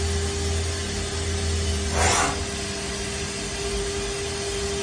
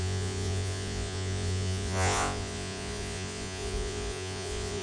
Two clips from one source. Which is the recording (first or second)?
first